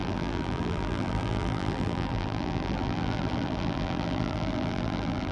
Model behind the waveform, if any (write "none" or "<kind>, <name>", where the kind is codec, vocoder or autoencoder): vocoder, BigVGAN v2